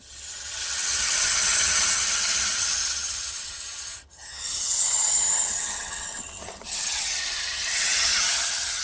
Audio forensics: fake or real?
fake